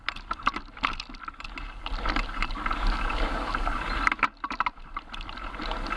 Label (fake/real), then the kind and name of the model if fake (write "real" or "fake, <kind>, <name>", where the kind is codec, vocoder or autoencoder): real